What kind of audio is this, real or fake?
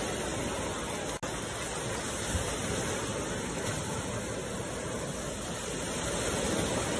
real